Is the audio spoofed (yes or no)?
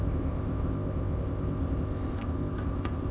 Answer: yes